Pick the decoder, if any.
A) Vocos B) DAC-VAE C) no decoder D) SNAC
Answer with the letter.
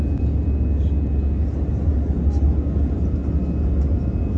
C